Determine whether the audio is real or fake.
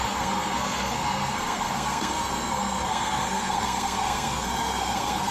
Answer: fake